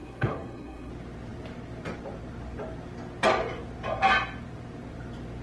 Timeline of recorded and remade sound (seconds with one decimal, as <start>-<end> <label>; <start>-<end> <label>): 0.0-0.9 remade; 0.9-5.4 recorded